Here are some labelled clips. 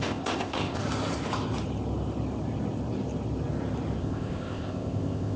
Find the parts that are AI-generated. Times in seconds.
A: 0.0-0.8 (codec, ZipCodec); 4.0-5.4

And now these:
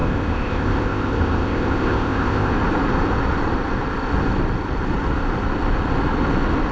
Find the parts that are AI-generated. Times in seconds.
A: 0.0-2.5 (codec, ZipCodec)

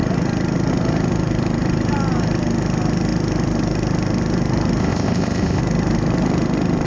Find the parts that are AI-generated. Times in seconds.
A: 4.8-5.6 (codec, ZipCodec)

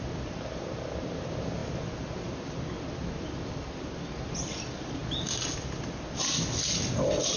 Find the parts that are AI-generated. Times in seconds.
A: none